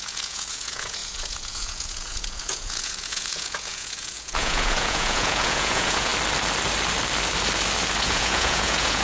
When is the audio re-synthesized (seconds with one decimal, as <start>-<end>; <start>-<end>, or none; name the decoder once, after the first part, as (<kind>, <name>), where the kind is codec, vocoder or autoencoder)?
0.0-6.1 (vocoder, Vocos); 8.0-9.0